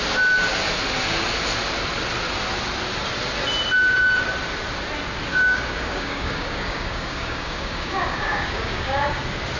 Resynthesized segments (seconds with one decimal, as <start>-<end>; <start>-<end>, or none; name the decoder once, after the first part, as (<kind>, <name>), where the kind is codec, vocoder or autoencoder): 5.3-9.2 (codec, DAC)